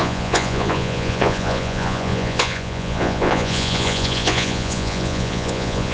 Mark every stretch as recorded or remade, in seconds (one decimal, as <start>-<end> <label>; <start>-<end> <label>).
0.0-5.9 remade